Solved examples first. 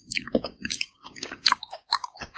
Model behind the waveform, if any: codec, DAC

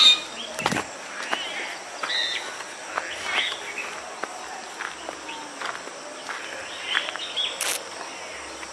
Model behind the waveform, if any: none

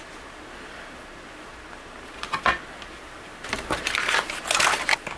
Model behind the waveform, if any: none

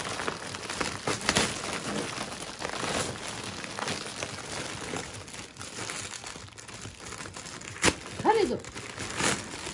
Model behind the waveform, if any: none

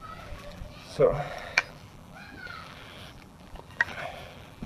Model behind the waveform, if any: vocoder, BigVGAN v2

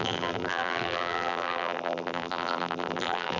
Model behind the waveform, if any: vocoder, BigVGAN v2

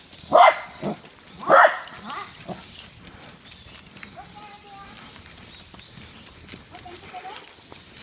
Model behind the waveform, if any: none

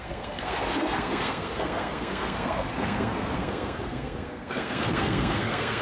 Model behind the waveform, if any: codec, SNAC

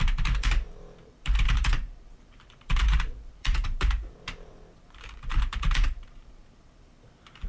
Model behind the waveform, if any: vocoder, BigVGAN v2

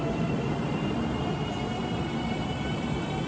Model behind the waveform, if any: none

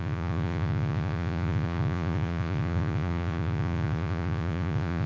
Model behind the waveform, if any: vocoder, Vocos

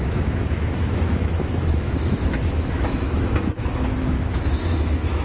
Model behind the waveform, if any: autoencoder, DAC-VAE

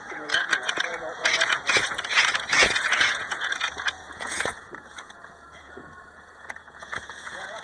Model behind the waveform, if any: vocoder, Vocos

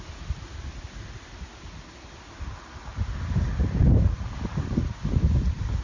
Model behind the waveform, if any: none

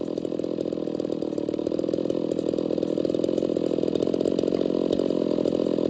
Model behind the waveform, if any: none